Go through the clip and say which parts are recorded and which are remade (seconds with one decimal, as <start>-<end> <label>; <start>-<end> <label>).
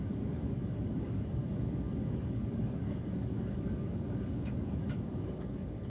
0.0-5.9 remade